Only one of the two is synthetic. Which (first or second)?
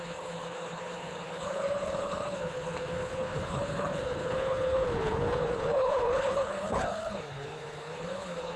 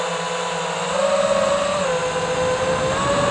first